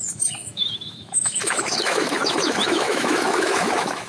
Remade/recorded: remade